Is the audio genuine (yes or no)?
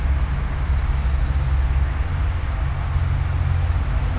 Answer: yes